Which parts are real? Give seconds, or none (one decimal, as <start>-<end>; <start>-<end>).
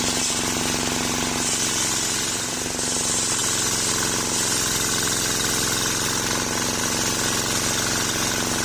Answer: 0.0-8.6